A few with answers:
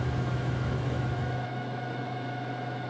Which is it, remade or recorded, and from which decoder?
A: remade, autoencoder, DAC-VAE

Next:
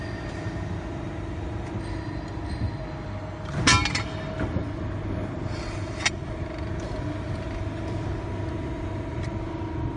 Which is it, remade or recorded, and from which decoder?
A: recorded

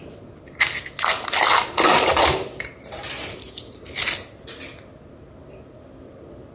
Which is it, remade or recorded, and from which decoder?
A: recorded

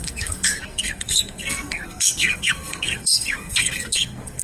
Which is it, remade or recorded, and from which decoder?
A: remade, codec, SNAC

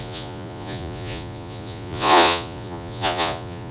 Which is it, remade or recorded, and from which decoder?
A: remade, vocoder, Vocos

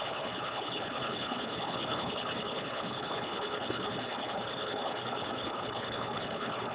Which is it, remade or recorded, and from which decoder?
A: remade, codec, HILCodec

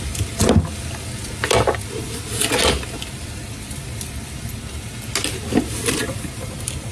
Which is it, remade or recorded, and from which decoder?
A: recorded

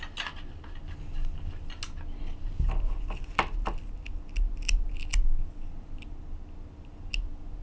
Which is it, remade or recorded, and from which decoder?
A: recorded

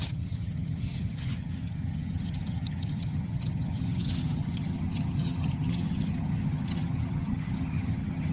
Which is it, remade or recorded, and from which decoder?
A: remade, vocoder, HiFi-GAN